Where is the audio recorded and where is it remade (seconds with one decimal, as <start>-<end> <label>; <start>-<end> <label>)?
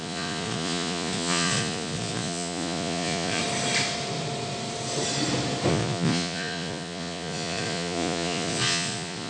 0.0-3.4 remade; 3.4-5.7 recorded; 5.7-9.3 remade